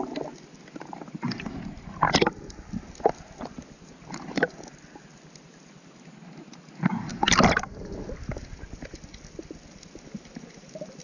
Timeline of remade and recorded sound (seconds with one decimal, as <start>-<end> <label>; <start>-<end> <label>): 0.0-7.1 recorded; 7.1-8.0 remade; 8.0-11.0 recorded